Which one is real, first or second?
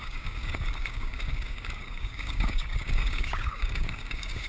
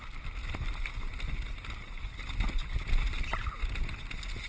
second